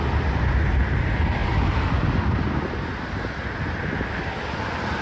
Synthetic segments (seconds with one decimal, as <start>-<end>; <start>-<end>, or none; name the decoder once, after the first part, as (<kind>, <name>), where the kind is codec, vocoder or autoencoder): none